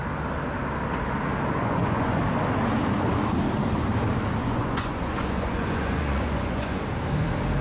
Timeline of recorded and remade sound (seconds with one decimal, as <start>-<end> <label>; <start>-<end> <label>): 0.0-1.6 recorded; 1.6-2.2 remade; 2.2-4.4 recorded; 4.4-6.8 remade; 6.8-7.6 recorded